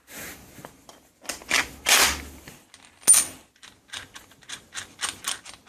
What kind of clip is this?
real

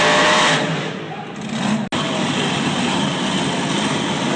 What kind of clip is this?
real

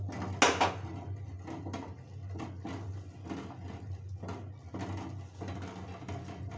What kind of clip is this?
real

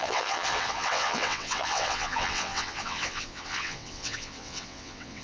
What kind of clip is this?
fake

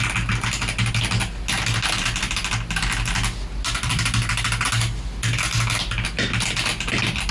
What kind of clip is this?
real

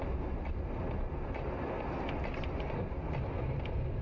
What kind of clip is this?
real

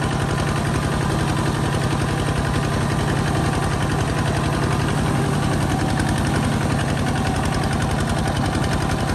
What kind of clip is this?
real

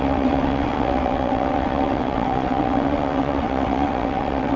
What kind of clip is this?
fake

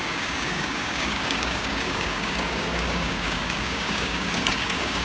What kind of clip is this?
fake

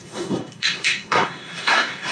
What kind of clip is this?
fake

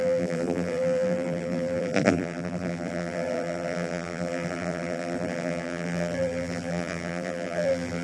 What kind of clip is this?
fake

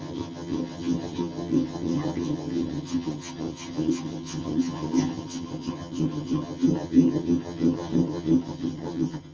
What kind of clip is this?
fake